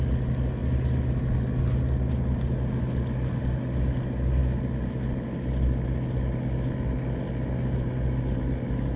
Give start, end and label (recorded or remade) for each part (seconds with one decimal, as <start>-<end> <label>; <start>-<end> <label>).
0.0-9.0 recorded